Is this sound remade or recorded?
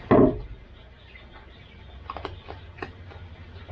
recorded